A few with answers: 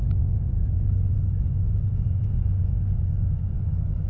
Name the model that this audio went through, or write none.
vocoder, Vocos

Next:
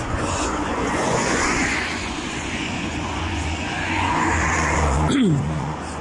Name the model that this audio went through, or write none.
vocoder, Vocos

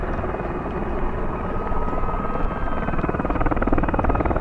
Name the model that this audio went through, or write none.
none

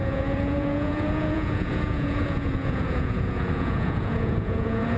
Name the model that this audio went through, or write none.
vocoder, Vocos